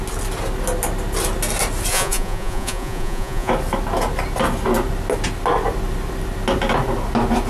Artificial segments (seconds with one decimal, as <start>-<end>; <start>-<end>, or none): 1.9-3.5